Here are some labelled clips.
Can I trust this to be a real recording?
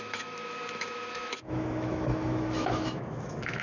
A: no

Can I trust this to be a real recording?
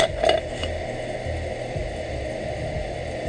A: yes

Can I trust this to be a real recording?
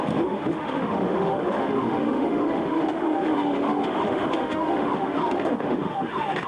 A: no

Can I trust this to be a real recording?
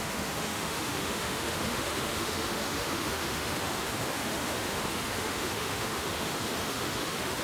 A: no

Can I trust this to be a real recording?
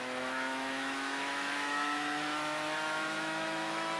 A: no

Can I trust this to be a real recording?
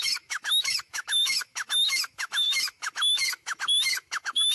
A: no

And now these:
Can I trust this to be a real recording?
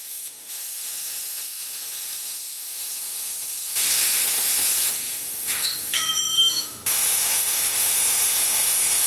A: no